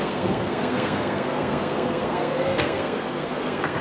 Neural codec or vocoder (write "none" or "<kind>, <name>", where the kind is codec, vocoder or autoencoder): codec, SNAC